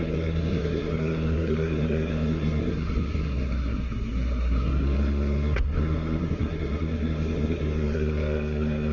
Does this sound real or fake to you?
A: fake